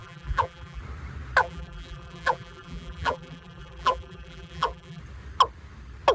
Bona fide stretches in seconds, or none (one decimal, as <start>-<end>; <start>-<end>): 0.8-1.4; 5.0-6.1